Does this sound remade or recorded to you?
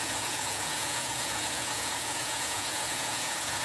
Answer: remade